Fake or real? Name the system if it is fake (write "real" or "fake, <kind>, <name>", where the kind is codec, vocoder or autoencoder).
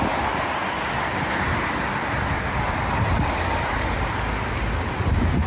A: real